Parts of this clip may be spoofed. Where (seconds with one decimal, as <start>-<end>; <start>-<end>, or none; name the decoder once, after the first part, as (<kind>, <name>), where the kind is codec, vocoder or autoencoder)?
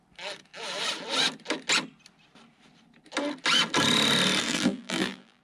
4.4-5.4 (vocoder, BigVGAN v2)